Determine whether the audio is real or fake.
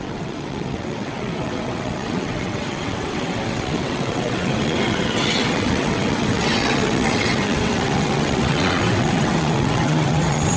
fake